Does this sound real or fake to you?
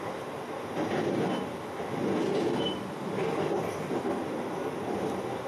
real